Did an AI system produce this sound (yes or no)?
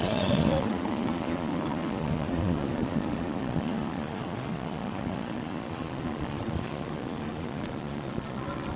yes